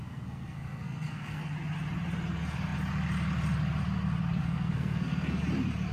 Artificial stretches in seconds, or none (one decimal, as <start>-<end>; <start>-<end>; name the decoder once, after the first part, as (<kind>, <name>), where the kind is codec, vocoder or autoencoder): 0.0-1.5 (codec, SNAC); 4.4-5.4